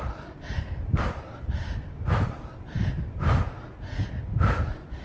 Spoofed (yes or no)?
no